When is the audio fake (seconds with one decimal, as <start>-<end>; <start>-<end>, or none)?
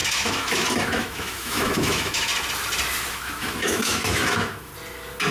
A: 0.0-2.3; 3.1-4.7